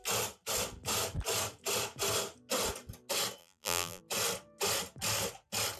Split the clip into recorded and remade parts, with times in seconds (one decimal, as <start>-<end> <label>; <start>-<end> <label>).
0.0-3.4 recorded; 3.4-4.0 remade; 4.0-5.8 recorded